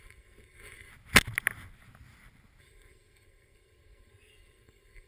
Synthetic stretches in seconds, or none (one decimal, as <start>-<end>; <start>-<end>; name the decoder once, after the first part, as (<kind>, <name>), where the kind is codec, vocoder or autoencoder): 0.0-0.9 (codec, SNAC); 2.6-5.1